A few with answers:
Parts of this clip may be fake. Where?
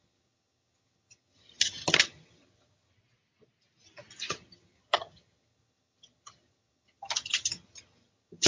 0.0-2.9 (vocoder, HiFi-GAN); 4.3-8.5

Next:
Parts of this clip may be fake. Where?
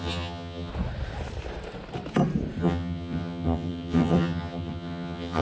0.0-0.7 (vocoder, HiFi-GAN); 2.6-5.4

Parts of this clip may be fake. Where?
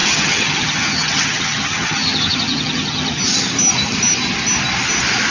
0.0-3.2 (vocoder, HiFi-GAN)